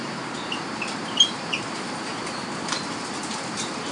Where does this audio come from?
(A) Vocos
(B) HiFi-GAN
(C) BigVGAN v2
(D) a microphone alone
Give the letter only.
C